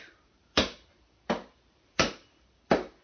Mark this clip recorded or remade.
remade